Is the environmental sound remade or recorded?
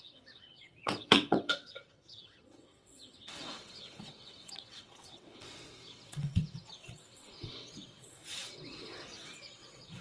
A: remade